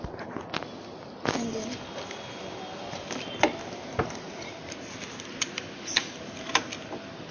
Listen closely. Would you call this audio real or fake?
real